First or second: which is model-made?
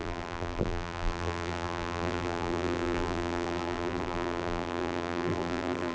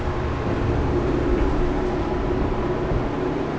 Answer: first